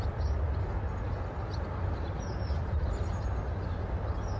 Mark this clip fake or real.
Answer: real